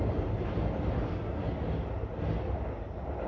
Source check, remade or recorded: recorded